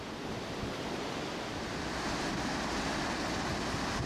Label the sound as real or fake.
real